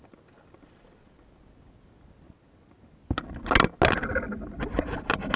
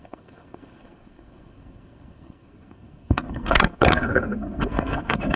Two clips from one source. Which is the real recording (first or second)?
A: first